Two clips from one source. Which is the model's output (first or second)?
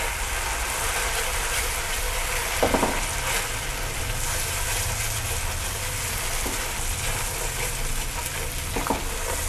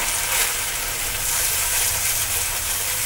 second